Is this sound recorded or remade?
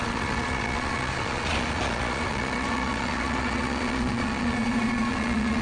remade